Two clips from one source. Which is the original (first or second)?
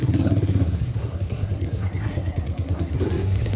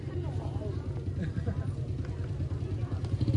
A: second